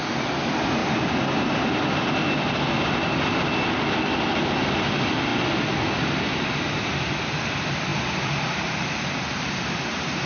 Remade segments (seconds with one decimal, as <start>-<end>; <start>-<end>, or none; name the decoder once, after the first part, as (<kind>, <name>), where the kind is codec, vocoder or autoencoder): none